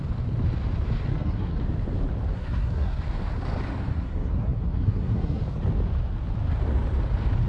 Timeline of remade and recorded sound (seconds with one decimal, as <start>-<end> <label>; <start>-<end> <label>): 0.0-1.1 recorded; 1.1-1.6 remade; 1.6-2.3 recorded; 2.3-3.0 remade; 3.0-3.9 recorded; 3.9-5.4 remade; 5.4-7.5 recorded